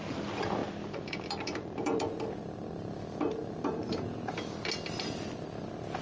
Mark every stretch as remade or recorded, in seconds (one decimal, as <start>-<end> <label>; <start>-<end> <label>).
0.0-6.0 recorded